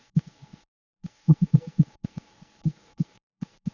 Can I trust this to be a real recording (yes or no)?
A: no